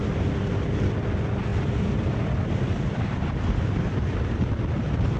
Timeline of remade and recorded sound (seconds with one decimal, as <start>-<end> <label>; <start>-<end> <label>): 0.0-0.5 remade; 0.5-1.5 recorded; 1.5-4.0 remade; 4.0-5.2 recorded

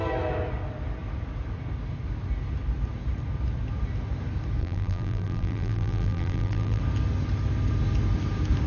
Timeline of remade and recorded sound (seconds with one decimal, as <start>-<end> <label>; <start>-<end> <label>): 0.0-4.6 recorded; 4.6-6.8 remade; 6.8-8.7 recorded

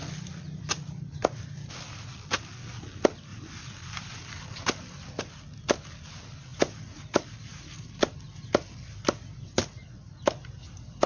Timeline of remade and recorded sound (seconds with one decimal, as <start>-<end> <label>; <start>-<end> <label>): 0.0-3.3 recorded; 3.3-5.2 remade; 5.2-6.5 recorded; 6.5-7.3 remade; 7.3-11.1 recorded